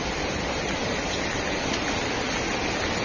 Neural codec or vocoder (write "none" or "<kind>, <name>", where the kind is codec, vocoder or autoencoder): vocoder, BigVGAN v2